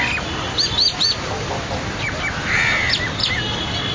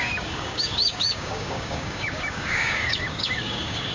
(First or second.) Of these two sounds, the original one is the first